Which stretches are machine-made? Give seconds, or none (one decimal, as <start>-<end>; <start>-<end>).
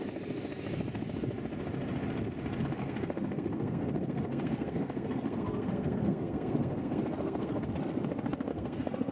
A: 2.8-7.7; 8.5-9.1